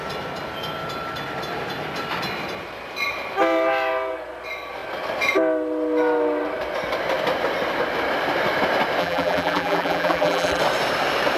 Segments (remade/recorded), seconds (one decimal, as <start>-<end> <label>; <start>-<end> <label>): 0.0-9.0 recorded; 9.0-10.6 remade; 10.6-11.4 recorded